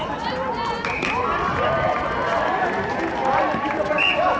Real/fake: real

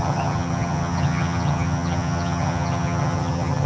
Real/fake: fake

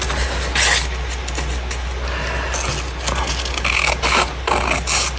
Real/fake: real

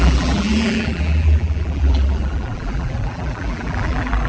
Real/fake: fake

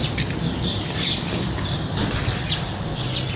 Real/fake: real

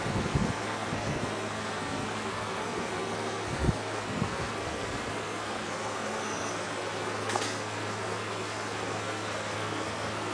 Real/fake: fake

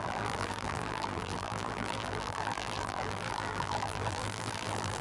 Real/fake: fake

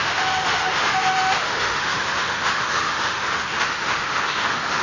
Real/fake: fake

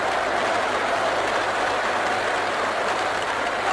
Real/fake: real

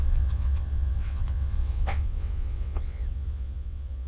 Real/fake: fake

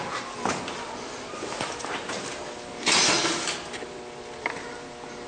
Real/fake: real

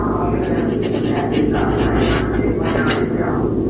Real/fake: real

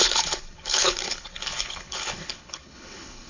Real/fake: fake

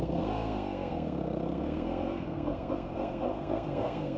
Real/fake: fake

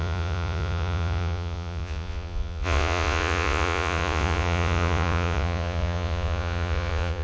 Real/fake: fake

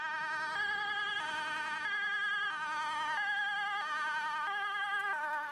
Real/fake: real